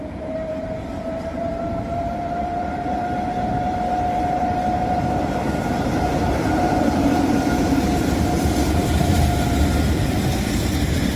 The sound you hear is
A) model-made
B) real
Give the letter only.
A